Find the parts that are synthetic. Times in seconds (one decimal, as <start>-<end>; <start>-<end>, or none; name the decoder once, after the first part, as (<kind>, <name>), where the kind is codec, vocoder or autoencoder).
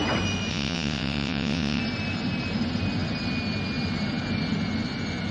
0.5-1.8 (vocoder, WaveNeXt)